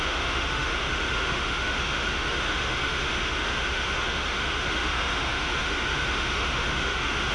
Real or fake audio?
fake